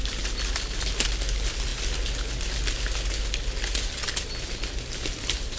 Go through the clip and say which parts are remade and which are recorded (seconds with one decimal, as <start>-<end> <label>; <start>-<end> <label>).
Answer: 0.0-5.6 recorded